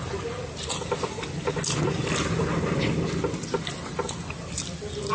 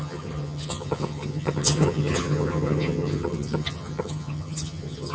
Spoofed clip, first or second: second